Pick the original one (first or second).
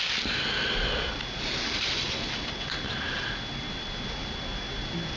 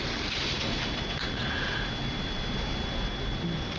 second